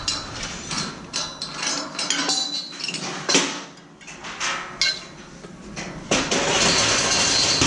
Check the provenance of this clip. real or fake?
real